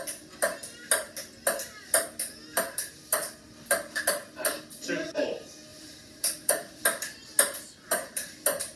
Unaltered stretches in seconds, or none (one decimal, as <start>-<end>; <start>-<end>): 0.0-5.7; 6.8-8.8